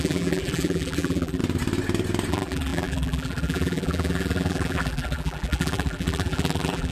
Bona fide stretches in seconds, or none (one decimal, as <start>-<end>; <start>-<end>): 1.4-2.3